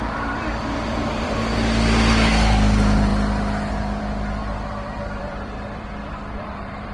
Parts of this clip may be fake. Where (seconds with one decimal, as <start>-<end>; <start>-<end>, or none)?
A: 0.0-3.1; 4.0-6.9